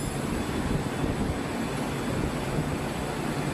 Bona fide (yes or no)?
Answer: yes